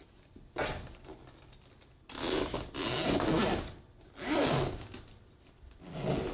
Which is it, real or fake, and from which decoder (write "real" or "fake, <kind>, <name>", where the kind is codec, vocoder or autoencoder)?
real